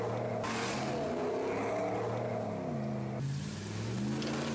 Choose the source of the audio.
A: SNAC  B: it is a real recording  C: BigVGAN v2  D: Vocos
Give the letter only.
B